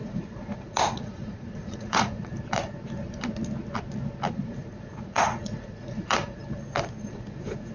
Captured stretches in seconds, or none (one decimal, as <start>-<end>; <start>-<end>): 2.3-4.3; 6.4-7.0